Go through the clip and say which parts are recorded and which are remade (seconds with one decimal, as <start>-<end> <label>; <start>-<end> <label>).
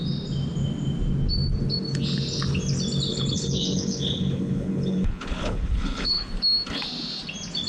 0.0-3.1 recorded; 3.1-6.3 remade; 6.3-7.7 recorded